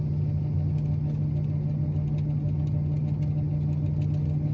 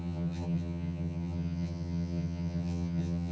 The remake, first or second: second